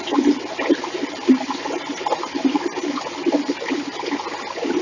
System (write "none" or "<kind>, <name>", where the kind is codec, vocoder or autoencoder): none